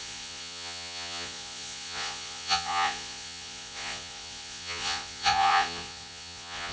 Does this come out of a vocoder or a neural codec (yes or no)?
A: yes